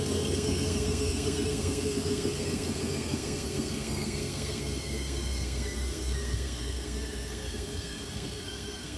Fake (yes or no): yes